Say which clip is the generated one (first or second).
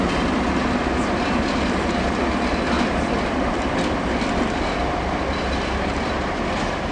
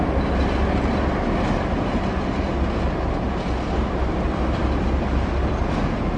first